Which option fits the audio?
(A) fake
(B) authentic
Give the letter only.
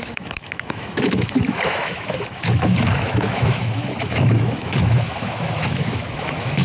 A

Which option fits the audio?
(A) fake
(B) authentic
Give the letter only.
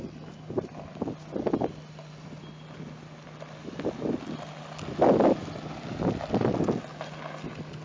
B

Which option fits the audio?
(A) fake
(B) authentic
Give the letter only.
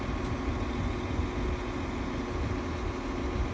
B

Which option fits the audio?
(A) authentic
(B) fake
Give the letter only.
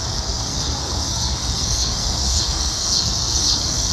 B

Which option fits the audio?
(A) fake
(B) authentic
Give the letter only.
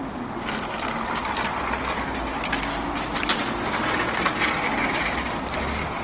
B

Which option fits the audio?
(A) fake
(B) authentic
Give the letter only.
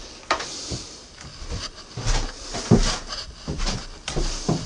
B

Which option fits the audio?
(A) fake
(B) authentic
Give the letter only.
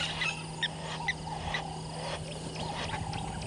B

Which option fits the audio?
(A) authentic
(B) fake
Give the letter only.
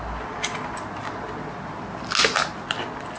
A